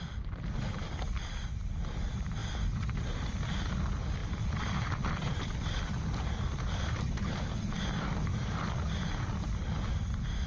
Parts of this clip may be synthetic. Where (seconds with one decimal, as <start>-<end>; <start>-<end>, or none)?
2.4-3.0; 4.2-7.3